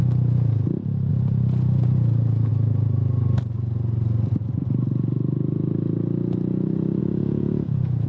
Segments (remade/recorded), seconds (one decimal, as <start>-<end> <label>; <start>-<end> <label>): 0.0-1.1 recorded; 1.1-2.5 remade; 2.5-7.0 recorded; 7.0-8.1 remade